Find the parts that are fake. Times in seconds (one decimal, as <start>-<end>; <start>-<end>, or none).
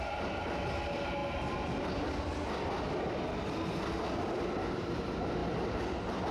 0.0-1.2; 1.9-5.4